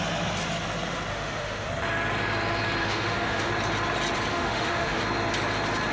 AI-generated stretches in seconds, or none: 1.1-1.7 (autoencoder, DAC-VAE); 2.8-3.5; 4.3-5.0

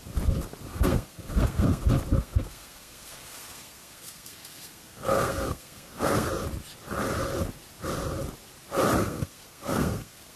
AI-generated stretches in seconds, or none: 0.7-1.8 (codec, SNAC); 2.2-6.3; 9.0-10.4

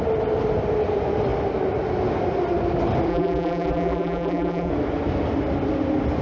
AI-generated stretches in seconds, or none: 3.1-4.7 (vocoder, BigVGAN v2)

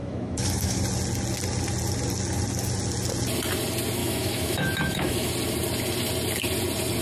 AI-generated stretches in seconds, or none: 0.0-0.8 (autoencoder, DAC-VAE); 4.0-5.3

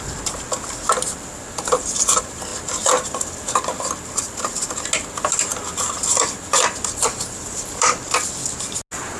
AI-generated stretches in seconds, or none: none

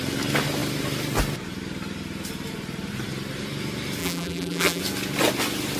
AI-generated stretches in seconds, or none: 4.0-4.8 (vocoder, BigVGAN v2)

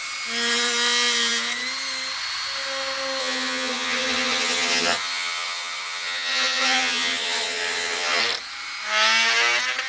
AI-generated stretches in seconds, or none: 3.2-8.2 (vocoder, HiFi-GAN)